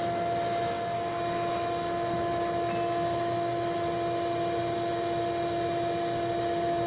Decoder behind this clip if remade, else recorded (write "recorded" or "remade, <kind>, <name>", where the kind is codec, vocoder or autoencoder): recorded